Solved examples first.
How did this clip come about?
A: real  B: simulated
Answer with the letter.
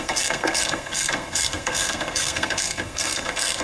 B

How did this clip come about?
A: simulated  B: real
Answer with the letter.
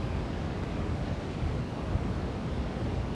A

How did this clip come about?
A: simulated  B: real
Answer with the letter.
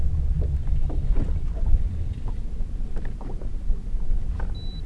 B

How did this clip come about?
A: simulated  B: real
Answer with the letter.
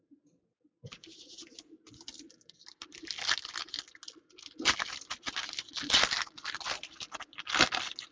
B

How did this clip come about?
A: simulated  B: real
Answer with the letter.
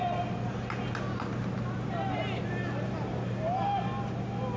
B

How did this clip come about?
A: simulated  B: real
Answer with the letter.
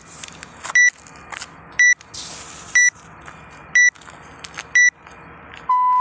B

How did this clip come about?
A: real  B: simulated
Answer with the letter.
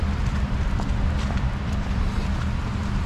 B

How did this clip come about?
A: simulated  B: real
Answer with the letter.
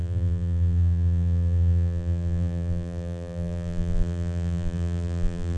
A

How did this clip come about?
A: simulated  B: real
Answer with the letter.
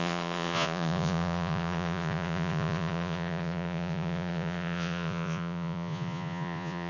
A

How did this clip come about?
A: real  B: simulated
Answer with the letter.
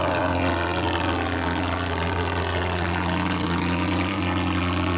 A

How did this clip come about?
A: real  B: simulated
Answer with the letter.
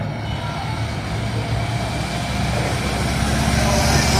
A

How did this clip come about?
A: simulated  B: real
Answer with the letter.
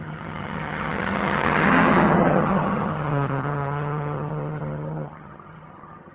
A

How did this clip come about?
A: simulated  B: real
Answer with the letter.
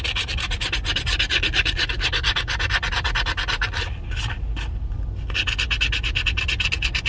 B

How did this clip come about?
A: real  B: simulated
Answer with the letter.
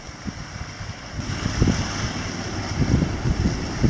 A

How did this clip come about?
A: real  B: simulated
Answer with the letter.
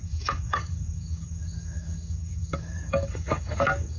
B